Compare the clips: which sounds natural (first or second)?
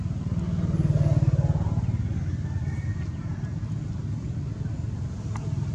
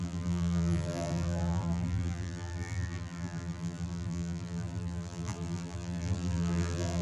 first